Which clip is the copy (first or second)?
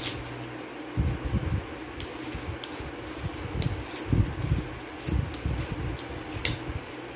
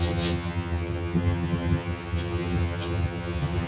second